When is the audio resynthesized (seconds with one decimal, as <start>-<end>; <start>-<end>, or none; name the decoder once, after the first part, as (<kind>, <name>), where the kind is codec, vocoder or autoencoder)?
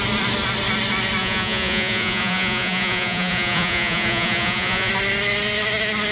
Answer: 1.2-4.9 (vocoder, Vocos)